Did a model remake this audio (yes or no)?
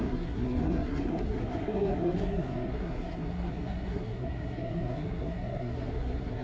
yes